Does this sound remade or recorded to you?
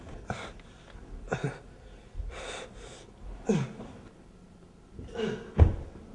recorded